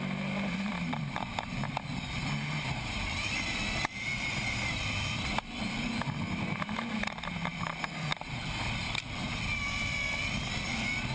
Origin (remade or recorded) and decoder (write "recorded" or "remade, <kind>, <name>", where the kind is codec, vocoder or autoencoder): remade, vocoder, BigVGAN v2